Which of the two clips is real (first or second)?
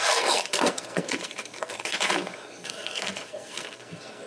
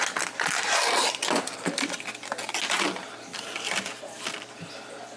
second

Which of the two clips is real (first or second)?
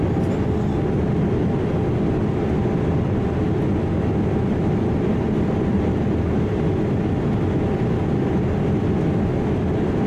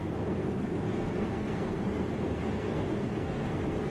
first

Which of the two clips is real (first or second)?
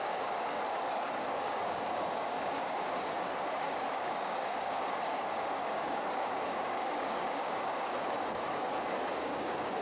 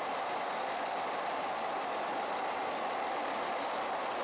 second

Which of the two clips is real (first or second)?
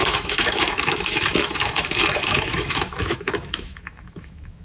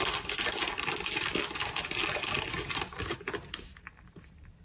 second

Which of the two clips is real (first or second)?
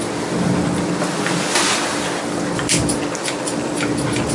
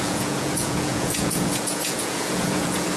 first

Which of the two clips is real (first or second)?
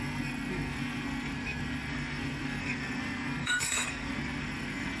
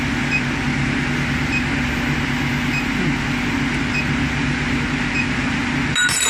second